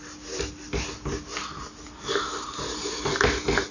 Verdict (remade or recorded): recorded